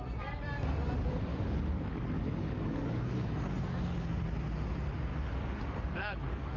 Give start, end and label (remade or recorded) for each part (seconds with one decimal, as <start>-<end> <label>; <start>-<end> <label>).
0.0-1.3 recorded; 1.3-3.5 remade; 3.5-5.1 recorded; 5.1-6.6 remade